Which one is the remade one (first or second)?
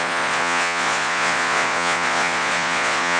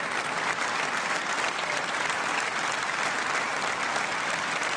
first